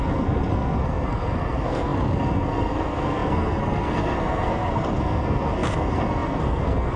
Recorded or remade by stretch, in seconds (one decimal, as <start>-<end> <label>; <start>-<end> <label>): 0.0-7.0 remade